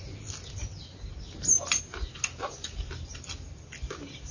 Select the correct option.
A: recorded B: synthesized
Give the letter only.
A